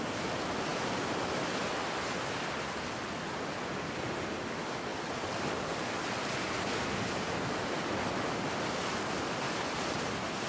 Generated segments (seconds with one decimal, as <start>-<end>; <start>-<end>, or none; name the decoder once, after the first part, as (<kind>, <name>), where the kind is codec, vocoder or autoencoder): none

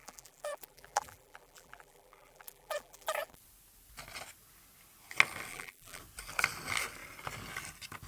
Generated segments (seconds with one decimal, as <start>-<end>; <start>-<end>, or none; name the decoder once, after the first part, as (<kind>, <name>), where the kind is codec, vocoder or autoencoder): 0.0-3.4 (vocoder, BigVGAN v2); 5.5-6.0